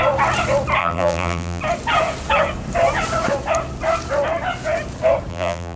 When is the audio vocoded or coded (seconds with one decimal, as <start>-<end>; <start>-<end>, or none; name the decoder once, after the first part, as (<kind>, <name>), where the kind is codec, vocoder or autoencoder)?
0.8-1.6 (vocoder, BigVGAN v2); 5.3-5.8